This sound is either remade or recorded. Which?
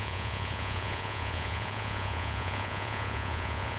remade